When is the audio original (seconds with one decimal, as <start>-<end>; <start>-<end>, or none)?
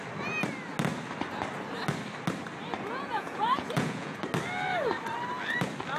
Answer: 0.0-2.9; 4.2-6.0